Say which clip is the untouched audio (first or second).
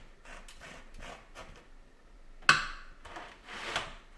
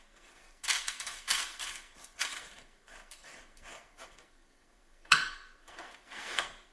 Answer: first